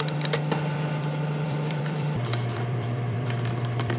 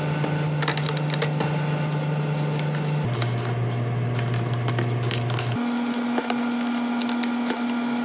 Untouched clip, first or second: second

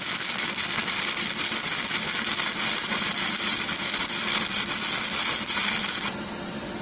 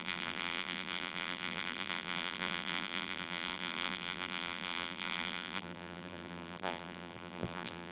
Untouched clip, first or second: first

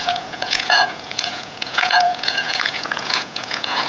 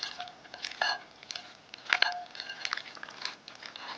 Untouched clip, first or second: second